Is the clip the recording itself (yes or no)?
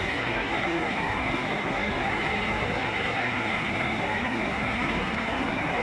no